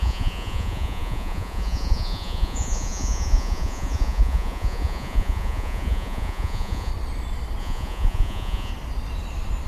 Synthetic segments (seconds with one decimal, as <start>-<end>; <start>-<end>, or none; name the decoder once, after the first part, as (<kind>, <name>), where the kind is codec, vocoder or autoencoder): 0.0-6.9 (vocoder, Vocos); 7.6-8.7

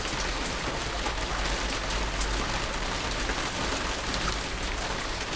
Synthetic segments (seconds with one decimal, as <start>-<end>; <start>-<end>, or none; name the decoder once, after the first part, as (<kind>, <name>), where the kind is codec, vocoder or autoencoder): none

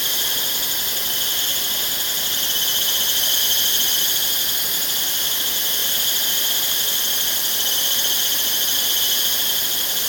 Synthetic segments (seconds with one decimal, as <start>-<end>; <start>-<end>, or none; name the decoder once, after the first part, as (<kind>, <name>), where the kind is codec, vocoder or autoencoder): 0.0-5.8 (vocoder, BigVGAN v2); 6.3-10.1

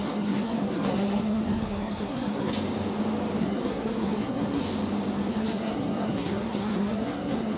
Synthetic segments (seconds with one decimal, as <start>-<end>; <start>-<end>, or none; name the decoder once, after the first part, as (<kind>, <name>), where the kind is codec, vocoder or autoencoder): 0.0-2.5 (codec, SNAC); 3.4-4.6; 5.3-7.6

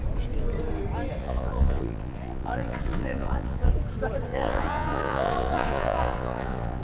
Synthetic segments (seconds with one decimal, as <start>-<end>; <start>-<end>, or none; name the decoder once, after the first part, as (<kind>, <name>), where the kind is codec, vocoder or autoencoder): 1.2-3.7 (vocoder, Vocos); 4.3-6.8

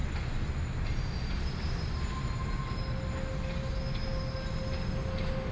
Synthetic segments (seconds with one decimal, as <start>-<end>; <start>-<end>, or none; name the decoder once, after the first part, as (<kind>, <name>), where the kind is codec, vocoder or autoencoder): none

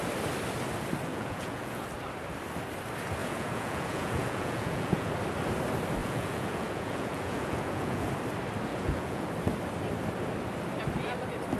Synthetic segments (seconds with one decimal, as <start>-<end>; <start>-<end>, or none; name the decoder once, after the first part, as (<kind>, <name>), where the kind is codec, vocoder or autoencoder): 1.1-1.9 (vocoder, Vocos); 3.2-5.1; 6.0-8.1; 8.7-9.3

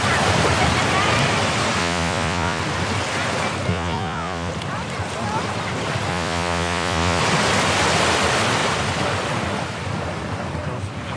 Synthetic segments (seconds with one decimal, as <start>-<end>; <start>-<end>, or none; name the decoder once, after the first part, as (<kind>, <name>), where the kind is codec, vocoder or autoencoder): 1.8-2.6 (vocoder, Vocos); 3.7-4.5; 6.1-7.2